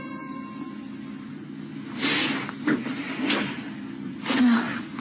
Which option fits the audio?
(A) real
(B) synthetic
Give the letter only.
A